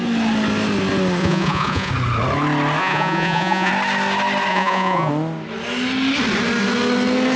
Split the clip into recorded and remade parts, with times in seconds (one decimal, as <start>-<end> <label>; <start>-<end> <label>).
0.0-1.2 recorded; 1.2-1.9 remade; 1.9-2.8 recorded; 2.8-3.7 remade; 3.7-4.5 recorded; 4.5-5.1 remade; 5.1-7.4 recorded

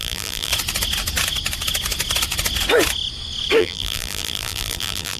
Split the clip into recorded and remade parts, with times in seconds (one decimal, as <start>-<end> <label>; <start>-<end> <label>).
0.0-0.5 remade; 0.5-3.6 recorded; 3.6-5.2 remade

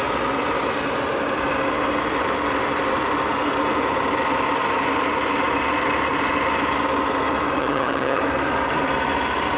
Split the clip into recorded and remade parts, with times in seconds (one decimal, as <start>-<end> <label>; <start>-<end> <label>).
0.0-7.6 recorded; 7.6-8.2 remade; 8.2-9.6 recorded

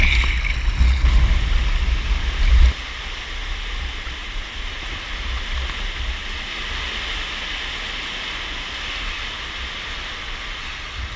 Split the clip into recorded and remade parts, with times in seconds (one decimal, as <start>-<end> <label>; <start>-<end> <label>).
0.0-4.2 recorded; 4.2-5.4 remade; 5.4-11.2 recorded

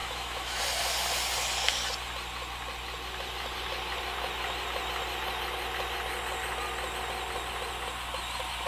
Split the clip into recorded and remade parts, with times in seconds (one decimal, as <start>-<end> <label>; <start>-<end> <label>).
0.0-0.6 remade; 0.6-8.7 recorded